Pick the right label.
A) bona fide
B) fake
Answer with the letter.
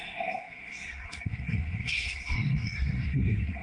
B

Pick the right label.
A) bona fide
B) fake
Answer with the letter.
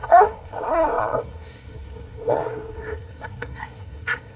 B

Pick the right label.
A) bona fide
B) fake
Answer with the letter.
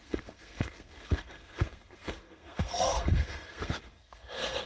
B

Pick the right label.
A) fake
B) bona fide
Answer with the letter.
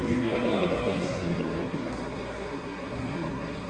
A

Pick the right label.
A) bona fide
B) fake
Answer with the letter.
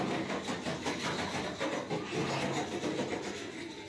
A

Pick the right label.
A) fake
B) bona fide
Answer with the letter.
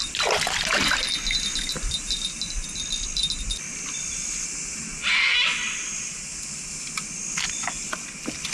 B